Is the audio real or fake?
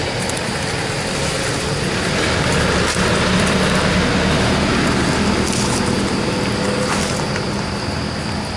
real